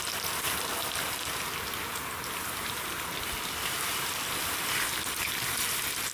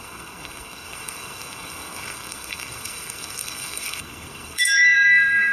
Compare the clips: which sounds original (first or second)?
first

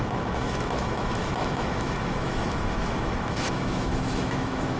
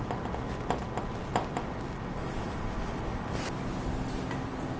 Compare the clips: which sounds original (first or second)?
second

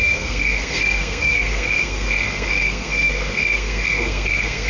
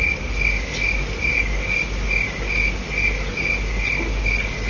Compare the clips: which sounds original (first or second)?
second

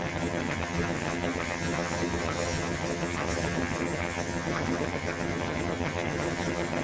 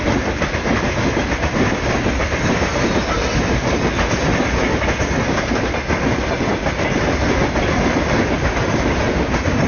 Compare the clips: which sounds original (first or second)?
second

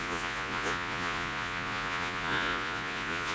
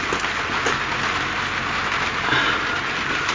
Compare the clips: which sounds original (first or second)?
second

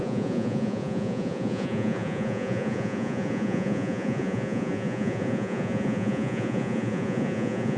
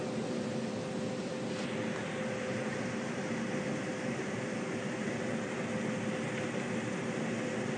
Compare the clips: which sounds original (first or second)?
second